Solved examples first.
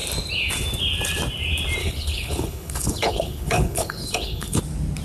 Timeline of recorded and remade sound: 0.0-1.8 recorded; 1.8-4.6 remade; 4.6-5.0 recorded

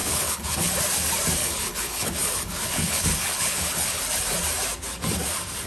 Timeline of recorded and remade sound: 0.0-0.7 remade; 0.7-1.4 recorded; 1.4-4.0 remade; 4.0-5.7 recorded

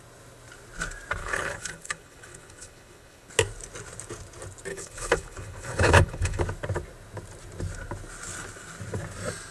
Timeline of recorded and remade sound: 0.0-1.2 recorded; 1.2-3.3 remade; 3.3-4.7 recorded; 4.7-6.4 remade; 6.4-9.5 recorded

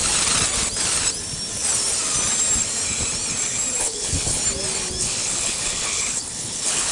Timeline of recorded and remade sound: 0.0-3.8 recorded; 3.8-4.4 remade; 4.4-5.0 recorded; 5.0-6.9 remade

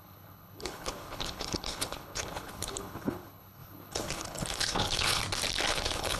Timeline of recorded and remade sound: 0.0-5.2 remade; 5.2-5.7 recorded; 5.7-6.2 remade